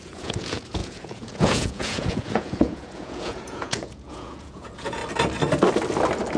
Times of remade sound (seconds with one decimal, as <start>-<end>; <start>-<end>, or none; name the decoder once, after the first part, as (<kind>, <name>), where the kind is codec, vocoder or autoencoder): 0.0-5.0 (vocoder, Vocos)